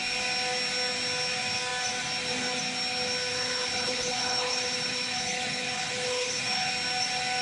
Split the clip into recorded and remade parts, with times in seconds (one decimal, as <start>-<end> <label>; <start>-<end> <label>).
0.0-3.3 recorded; 3.3-6.7 remade; 6.7-7.4 recorded